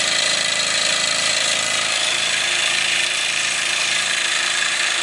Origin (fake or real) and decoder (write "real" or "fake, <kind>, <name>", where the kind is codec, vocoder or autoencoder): fake, vocoder, BigVGAN v2